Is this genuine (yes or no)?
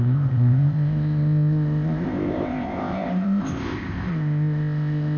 no